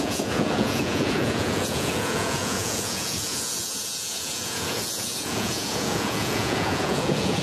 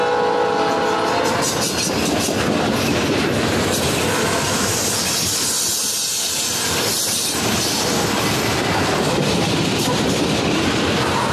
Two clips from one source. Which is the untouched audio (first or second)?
second